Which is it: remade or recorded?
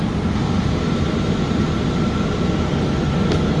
recorded